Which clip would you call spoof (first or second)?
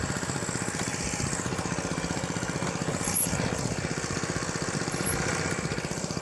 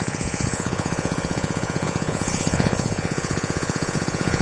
second